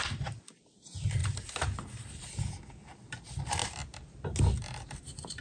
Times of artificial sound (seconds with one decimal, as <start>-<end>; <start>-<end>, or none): none